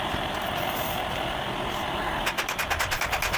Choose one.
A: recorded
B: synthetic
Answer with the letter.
B